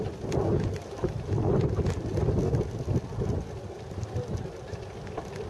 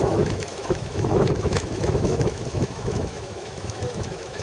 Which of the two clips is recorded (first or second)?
first